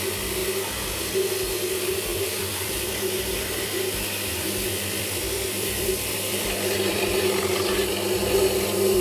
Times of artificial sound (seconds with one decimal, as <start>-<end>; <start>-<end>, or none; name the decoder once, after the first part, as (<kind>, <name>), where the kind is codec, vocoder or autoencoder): 2.1-7.1 (vocoder, BigVGAN v2)